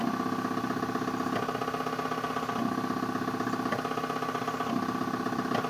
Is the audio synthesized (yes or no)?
no